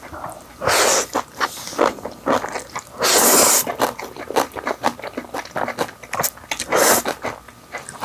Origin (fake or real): real